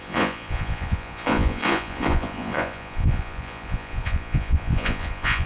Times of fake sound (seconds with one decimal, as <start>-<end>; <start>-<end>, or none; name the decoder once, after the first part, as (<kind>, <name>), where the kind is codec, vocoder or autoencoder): 0.0-5.5 (vocoder, Vocos)